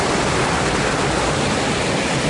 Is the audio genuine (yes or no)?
yes